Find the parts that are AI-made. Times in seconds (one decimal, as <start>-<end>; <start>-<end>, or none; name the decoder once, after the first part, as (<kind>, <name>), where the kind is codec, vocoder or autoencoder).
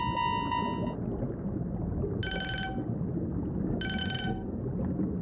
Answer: 4.0-4.6 (codec, SNAC)